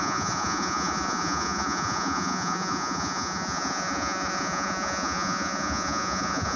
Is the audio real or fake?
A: fake